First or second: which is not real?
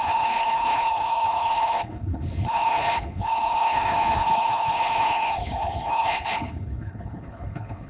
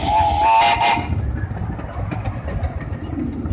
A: first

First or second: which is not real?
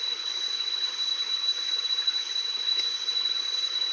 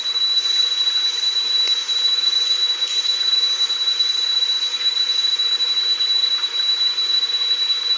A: first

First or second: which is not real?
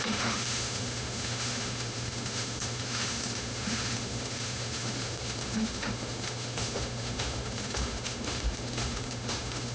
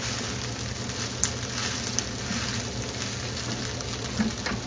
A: first